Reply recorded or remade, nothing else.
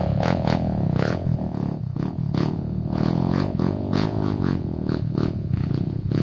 remade